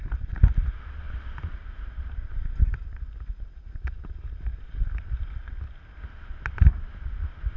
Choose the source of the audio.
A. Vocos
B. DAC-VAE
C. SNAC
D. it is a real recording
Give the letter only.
D